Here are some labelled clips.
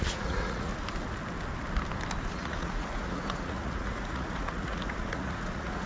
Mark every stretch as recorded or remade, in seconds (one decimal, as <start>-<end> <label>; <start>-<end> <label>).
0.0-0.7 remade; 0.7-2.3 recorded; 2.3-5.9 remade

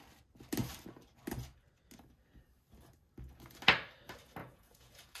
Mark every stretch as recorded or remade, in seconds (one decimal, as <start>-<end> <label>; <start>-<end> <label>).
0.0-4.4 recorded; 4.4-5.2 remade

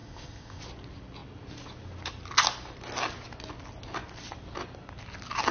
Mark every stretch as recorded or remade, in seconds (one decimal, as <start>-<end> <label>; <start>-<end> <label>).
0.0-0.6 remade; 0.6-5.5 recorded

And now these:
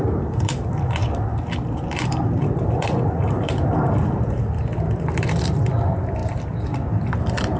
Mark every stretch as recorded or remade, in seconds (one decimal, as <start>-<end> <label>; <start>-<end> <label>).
0.0-7.6 remade

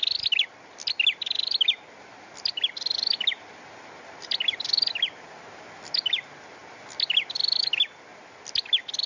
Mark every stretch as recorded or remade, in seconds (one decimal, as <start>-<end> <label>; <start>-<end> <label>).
0.0-9.1 recorded

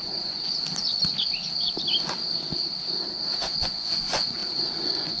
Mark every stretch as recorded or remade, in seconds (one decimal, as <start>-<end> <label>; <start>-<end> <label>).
0.0-0.4 remade; 0.4-3.4 recorded; 3.4-5.2 remade